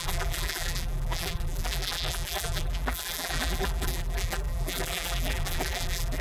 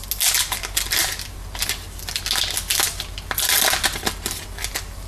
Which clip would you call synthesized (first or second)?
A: first